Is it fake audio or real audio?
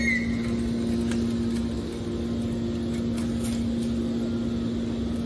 real